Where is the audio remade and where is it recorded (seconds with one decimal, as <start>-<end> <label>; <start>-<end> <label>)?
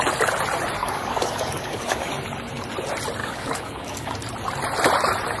0.0-0.8 recorded; 0.8-2.1 remade; 2.1-3.2 recorded; 3.2-4.1 remade; 4.1-5.4 recorded